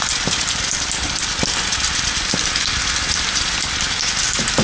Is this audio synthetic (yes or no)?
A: no